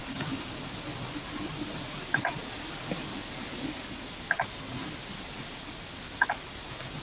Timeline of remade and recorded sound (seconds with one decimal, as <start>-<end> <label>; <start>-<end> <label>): 0.0-7.0 recorded